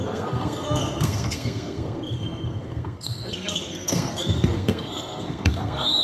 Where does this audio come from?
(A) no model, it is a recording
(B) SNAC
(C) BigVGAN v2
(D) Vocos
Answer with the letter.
B